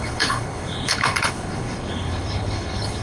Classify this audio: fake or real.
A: fake